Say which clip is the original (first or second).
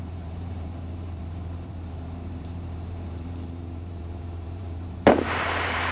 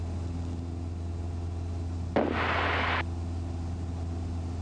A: second